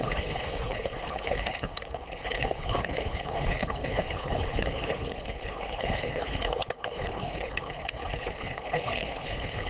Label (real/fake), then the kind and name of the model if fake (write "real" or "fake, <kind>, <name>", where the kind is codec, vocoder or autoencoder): fake, codec, HILCodec